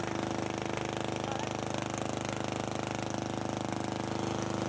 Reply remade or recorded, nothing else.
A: recorded